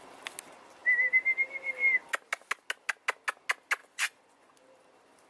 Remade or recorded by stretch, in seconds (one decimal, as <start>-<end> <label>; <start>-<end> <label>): 0.0-3.8 recorded; 3.8-4.5 remade; 4.5-5.3 recorded